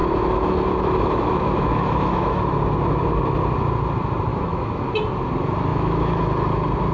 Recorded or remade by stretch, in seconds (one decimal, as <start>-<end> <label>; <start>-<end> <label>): 0.0-2.5 remade; 2.5-4.3 recorded; 4.3-4.8 remade; 4.8-5.7 recorded; 5.7-6.2 remade; 6.2-6.9 recorded